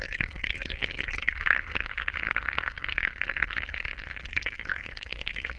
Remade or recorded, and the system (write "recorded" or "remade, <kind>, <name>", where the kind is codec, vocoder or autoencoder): remade, codec, SNAC